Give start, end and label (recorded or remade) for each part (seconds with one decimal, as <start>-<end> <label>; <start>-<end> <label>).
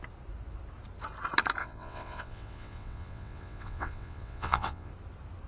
0.0-1.6 recorded; 1.6-4.9 remade; 4.9-5.5 recorded